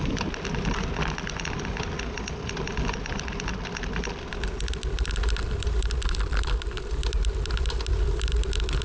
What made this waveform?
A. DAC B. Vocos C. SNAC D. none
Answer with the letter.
D